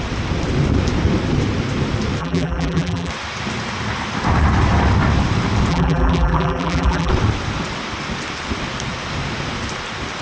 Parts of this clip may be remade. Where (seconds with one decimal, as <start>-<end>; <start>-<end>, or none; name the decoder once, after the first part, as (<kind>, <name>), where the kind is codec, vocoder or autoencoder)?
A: 2.2-3.1 (vocoder, BigVGAN v2); 5.7-7.1